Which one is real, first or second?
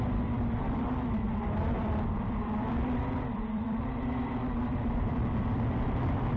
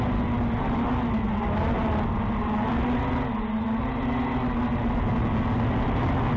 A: second